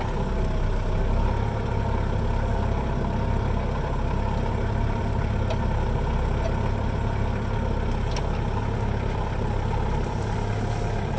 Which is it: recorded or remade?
recorded